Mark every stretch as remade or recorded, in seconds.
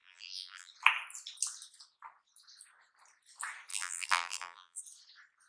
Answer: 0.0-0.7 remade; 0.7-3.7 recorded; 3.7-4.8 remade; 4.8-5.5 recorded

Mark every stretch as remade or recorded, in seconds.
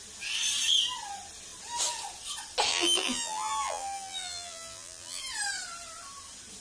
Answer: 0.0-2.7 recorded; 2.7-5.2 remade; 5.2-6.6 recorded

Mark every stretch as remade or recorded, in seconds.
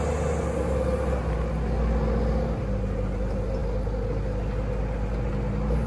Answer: 0.0-5.9 recorded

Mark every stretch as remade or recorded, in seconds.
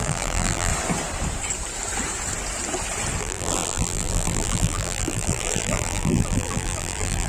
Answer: 0.0-0.7 remade; 0.7-3.2 recorded; 3.2-7.3 remade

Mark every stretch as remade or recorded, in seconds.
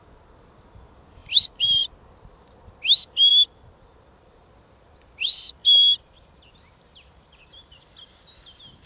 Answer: 0.0-1.2 recorded; 1.2-1.9 remade; 1.9-5.6 recorded; 5.6-7.8 remade; 7.8-8.9 recorded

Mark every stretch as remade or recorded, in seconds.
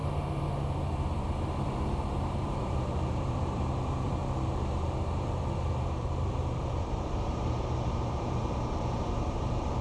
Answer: 0.0-0.9 recorded; 0.9-4.2 remade; 4.2-5.1 recorded; 5.1-9.8 remade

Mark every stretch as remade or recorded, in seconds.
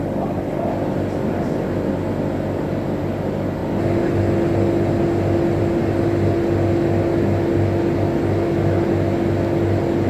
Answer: 0.0-10.1 recorded